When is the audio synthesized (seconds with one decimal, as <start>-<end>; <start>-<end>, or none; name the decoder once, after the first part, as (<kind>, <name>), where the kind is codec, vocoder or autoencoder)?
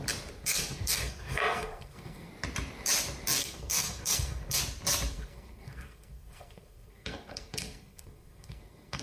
0.4-2.3 (codec, SNAC); 3.4-4.6; 5.1-9.0